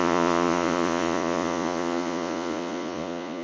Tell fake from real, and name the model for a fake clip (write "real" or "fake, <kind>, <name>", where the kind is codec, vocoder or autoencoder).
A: fake, vocoder, Vocos